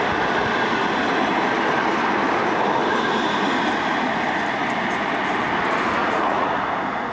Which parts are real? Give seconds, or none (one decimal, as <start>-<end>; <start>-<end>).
0.0-6.0; 6.6-7.1